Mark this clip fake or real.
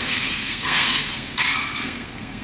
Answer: fake